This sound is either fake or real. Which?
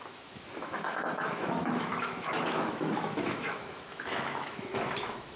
fake